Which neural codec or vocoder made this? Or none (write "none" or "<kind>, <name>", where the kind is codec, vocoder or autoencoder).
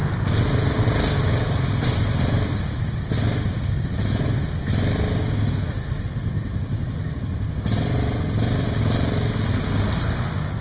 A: none